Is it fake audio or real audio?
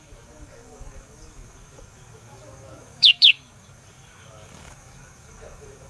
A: fake